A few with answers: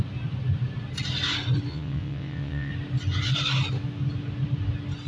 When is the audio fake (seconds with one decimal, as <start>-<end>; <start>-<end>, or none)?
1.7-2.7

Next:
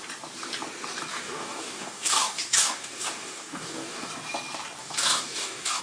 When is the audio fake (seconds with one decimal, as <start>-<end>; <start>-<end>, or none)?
1.1-4.1; 4.8-5.8

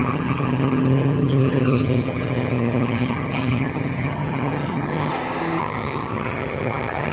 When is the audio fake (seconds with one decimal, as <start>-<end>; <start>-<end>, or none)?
0.0-5.1; 5.6-7.1

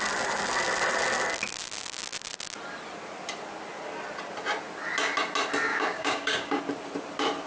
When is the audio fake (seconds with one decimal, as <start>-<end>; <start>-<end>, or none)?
5.7-6.6

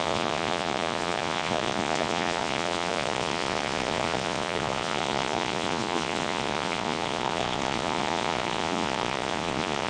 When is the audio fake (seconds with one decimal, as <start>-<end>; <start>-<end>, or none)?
0.0-9.9